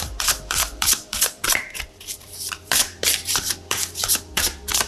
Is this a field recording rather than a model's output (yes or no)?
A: no